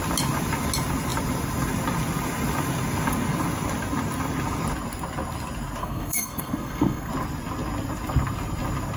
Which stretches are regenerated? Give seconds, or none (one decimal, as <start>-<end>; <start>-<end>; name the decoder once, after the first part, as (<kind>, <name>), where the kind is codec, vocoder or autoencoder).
5.8-7.1 (codec, SNAC)